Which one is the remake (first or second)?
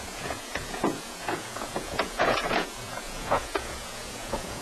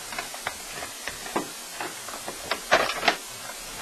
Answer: first